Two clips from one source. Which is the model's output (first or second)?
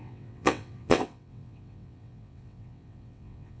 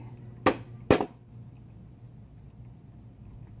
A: first